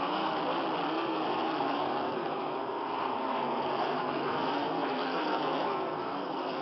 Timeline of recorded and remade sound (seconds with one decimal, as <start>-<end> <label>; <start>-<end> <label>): 0.0-0.4 remade; 0.4-0.9 recorded; 0.9-6.6 remade